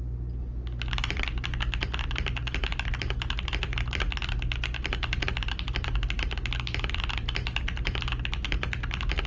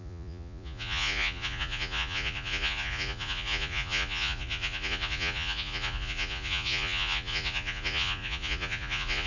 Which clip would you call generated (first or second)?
second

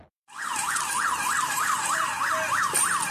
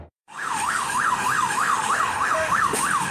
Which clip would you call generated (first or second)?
second